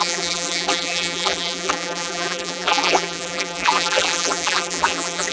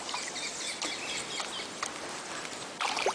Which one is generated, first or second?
first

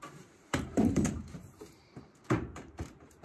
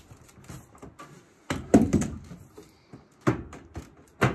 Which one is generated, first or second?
first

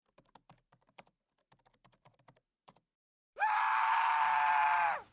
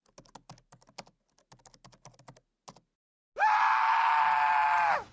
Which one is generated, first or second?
first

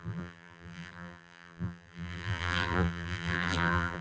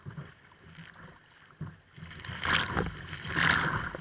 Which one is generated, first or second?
first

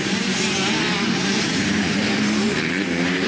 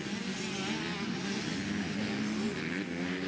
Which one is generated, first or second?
first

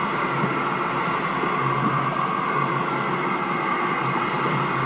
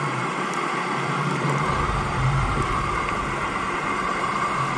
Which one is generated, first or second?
second